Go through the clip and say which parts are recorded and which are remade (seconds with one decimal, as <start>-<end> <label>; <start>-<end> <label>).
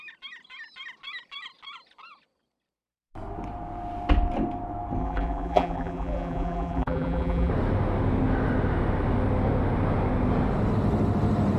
0.0-5.0 recorded; 5.0-7.5 remade; 7.5-11.6 recorded